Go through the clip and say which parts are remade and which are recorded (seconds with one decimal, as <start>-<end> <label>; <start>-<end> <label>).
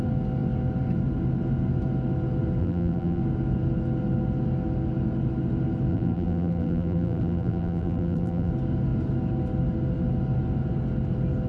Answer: 0.0-2.6 recorded; 2.6-3.2 remade; 3.2-5.9 recorded; 5.9-8.5 remade; 8.5-11.5 recorded